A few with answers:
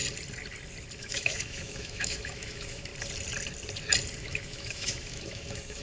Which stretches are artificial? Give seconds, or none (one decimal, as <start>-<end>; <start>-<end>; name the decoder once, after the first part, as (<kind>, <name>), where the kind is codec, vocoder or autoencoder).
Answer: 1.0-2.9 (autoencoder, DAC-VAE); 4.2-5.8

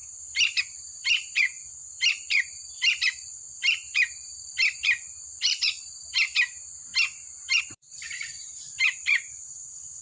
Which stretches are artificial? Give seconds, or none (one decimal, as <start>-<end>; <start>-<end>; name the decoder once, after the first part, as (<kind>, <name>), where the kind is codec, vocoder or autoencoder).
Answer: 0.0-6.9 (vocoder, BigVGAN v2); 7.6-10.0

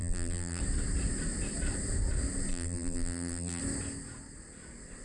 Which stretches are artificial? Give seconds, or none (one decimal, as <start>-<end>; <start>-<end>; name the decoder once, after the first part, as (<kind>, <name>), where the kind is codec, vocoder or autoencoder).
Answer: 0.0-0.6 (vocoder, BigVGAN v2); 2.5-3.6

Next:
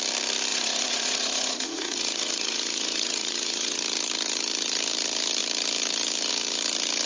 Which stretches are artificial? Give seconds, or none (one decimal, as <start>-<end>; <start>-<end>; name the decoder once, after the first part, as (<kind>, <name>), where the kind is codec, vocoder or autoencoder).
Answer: 0.5-3.8 (vocoder, Vocos)